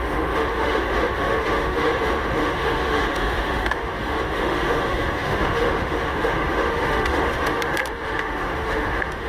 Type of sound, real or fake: fake